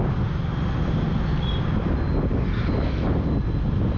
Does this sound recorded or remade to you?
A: recorded